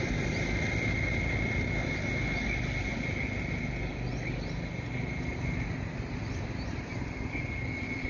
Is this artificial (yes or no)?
no